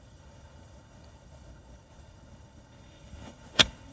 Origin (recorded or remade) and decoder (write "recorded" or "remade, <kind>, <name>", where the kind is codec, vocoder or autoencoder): remade, codec, HILCodec